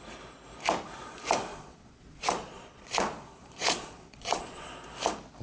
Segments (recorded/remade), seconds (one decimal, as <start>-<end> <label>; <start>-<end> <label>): 0.0-1.5 recorded; 1.5-4.7 remade; 4.7-5.4 recorded

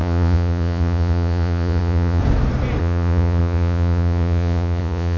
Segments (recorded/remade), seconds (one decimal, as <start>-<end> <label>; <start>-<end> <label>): 0.0-2.2 remade; 2.2-2.8 recorded; 2.8-5.2 remade

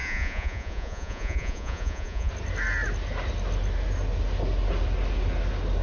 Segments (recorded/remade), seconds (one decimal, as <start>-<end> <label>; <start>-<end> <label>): 0.0-2.3 remade; 2.3-5.8 recorded

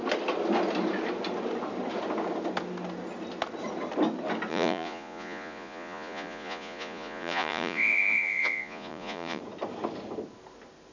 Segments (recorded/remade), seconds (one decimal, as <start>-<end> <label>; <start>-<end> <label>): 0.0-4.5 recorded; 4.5-9.4 remade; 9.4-10.9 recorded

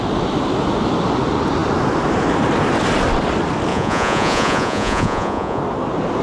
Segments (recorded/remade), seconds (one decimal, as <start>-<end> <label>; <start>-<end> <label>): 0.0-3.7 recorded; 3.7-5.6 remade; 5.6-6.2 recorded